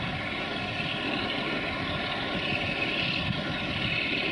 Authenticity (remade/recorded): recorded